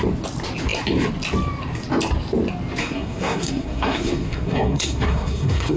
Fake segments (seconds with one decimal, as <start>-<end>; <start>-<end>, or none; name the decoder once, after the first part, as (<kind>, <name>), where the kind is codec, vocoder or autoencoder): 2.8-5.8 (codec, SNAC)